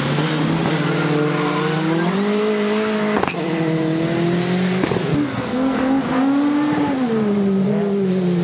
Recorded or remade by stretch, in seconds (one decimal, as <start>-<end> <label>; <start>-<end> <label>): 0.0-5.1 recorded; 5.1-6.0 remade; 6.0-8.4 recorded